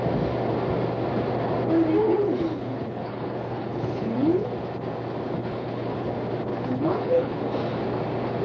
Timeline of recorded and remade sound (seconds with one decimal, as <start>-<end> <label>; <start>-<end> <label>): 0.0-2.0 recorded; 2.0-4.5 remade; 4.5-5.4 recorded; 5.4-6.1 remade; 6.1-6.5 recorded; 6.5-7.4 remade; 7.4-8.4 recorded